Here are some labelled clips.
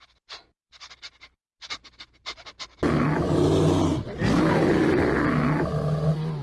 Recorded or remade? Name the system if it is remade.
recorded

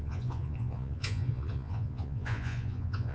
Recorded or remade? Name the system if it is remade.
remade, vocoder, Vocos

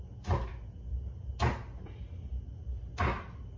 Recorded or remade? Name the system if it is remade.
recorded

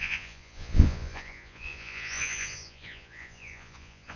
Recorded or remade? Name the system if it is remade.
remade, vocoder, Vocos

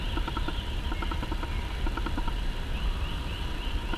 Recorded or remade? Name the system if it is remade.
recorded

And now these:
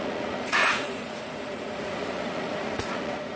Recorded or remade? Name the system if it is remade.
remade, vocoder, Vocos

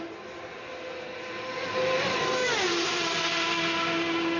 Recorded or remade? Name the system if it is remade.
recorded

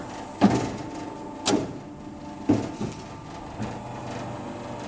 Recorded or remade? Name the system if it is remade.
recorded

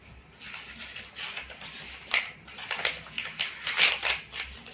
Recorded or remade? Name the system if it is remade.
recorded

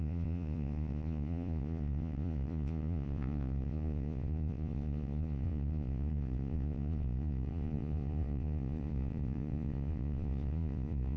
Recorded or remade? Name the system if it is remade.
remade, vocoder, Vocos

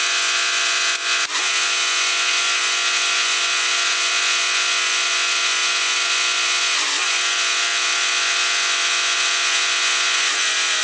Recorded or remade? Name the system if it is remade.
remade, vocoder, Vocos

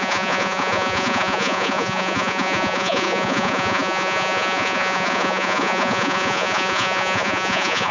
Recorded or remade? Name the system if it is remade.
remade, vocoder, Vocos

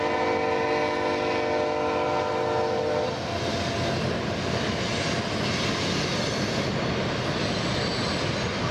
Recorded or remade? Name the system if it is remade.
recorded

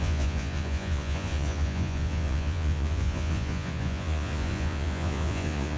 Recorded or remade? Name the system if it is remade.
remade, vocoder, Vocos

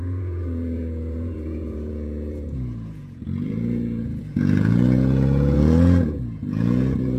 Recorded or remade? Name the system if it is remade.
remade, vocoder, Vocos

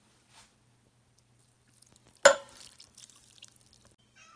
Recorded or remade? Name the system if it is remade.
recorded